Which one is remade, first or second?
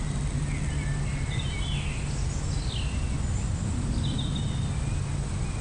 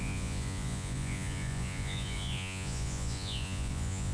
second